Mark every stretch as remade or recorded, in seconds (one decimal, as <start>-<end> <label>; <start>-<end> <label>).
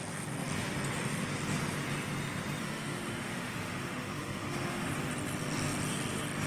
0.0-2.6 recorded; 2.6-4.9 remade; 4.9-6.5 recorded